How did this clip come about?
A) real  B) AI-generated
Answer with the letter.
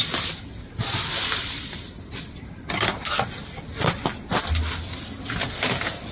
A